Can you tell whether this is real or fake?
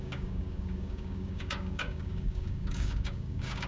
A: fake